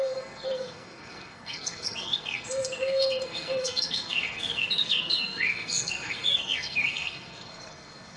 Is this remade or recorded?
remade